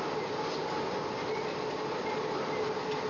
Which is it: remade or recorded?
recorded